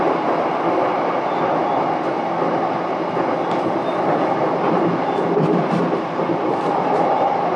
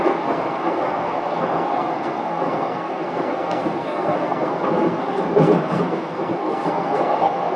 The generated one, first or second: second